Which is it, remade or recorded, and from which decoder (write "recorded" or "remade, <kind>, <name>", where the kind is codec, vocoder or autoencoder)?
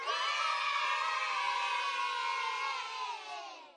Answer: recorded